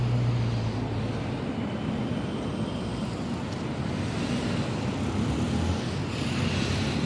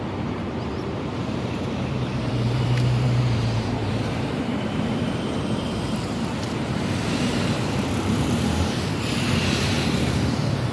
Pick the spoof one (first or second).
second